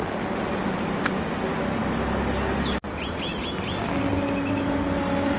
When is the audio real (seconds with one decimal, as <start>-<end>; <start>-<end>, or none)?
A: 0.0-5.4